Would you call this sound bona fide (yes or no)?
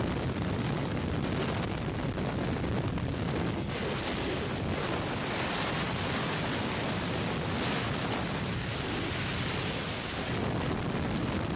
yes